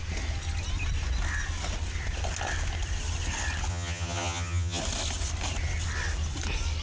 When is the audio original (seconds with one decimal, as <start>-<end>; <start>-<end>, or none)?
0.0-3.7; 4.8-6.8